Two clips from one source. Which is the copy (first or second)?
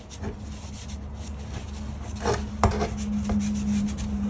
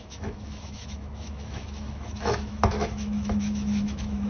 second